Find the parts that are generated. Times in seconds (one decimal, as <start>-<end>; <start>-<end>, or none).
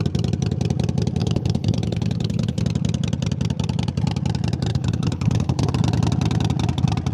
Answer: 1.2-2.6; 4.7-5.7